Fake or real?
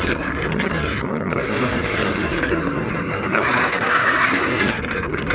fake